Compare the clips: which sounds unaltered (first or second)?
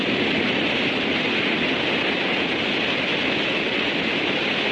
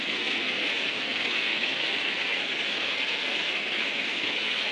first